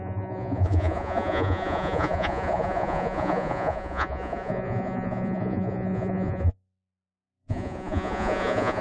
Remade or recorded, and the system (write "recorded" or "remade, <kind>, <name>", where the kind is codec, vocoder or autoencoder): remade, vocoder, Vocos